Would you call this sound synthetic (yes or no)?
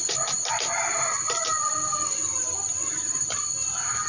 no